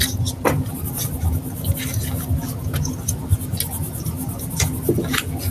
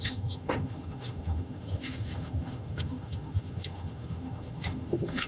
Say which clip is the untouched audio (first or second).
first